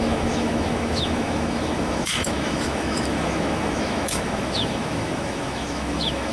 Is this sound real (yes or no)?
no